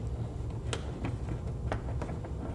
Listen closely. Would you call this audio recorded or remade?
recorded